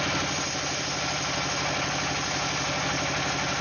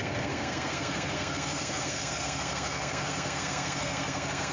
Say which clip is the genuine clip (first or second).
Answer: first